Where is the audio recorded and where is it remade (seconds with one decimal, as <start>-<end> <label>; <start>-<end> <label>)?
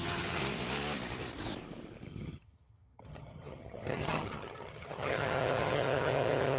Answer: 0.0-0.4 remade; 0.4-2.1 recorded; 2.1-6.6 remade